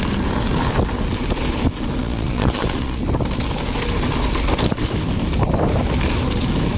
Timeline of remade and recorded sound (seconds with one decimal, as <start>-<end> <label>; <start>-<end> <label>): 0.0-2.0 recorded; 2.0-3.0 remade; 3.0-6.8 recorded